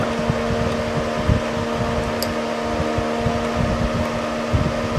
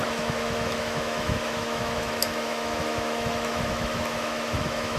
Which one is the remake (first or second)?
second